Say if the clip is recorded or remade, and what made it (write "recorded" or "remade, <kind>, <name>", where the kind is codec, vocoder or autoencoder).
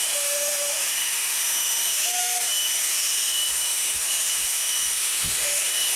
remade, autoencoder, DAC-VAE